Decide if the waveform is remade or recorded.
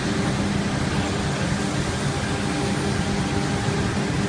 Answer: recorded